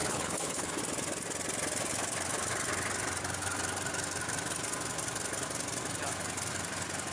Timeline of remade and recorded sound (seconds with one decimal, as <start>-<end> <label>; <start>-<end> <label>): 0.0-0.8 remade; 0.8-7.1 recorded